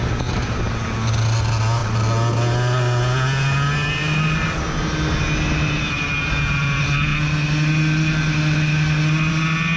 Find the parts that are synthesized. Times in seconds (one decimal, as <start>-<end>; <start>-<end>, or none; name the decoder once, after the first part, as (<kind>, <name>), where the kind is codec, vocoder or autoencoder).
none